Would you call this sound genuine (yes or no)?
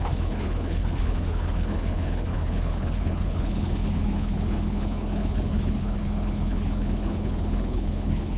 no